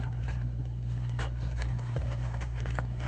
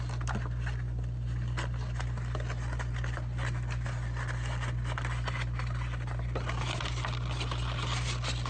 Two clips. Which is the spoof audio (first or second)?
first